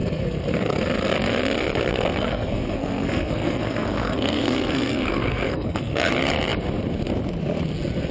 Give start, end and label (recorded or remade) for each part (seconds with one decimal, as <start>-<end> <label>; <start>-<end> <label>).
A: 0.0-0.8 remade; 0.8-1.9 recorded; 1.9-6.1 remade; 6.1-8.1 recorded